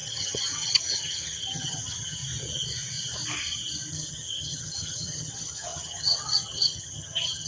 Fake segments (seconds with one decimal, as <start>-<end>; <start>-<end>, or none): 0.0-2.2; 3.9-7.5

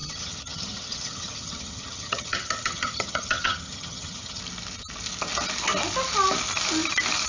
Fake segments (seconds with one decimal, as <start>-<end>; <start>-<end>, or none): 0.0-4.4

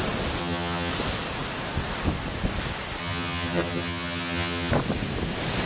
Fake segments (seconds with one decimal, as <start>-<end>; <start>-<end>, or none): 0.4-0.9; 3.0-4.7

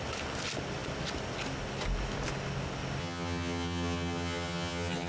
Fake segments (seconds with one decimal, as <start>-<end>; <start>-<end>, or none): 3.0-5.1

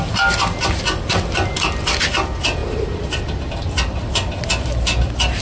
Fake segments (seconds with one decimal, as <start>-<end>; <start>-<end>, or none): none

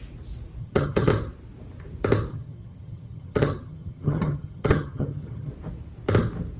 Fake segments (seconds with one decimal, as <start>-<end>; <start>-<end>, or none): 0.6-1.1; 2.3-5.5